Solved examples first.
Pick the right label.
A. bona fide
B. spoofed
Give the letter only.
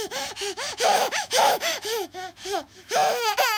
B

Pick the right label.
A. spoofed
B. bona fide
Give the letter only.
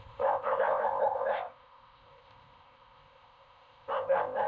A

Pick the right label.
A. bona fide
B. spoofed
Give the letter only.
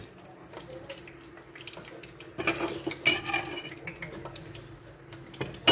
A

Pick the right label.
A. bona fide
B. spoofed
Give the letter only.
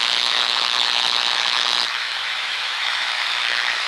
B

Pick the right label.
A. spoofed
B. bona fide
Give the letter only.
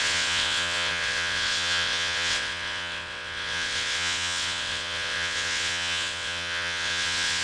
A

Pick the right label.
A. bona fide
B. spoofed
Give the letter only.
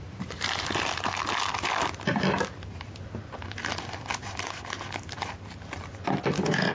A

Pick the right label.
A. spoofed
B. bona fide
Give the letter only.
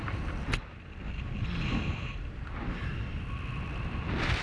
B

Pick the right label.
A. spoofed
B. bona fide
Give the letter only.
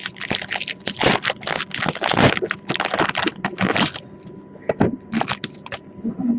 B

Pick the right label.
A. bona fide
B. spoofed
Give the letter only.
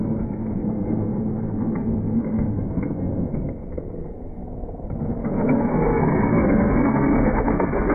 B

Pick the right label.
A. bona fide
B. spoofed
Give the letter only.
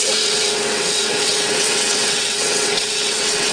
B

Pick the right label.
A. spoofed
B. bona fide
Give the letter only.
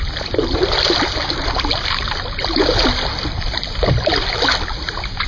B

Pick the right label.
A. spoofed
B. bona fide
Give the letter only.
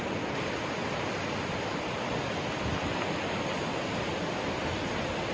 B